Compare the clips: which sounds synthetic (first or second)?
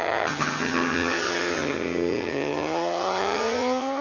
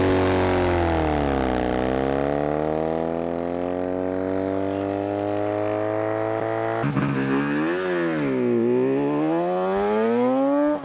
first